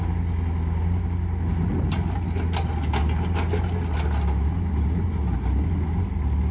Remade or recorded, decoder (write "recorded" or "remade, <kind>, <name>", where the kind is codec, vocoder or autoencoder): recorded